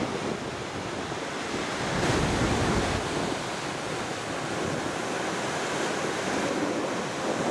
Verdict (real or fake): real